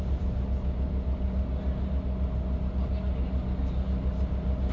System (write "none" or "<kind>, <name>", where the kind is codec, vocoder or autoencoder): none